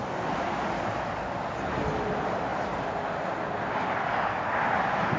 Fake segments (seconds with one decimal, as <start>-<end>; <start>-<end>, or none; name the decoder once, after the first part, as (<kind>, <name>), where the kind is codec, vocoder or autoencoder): none